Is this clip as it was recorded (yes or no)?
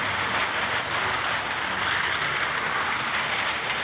no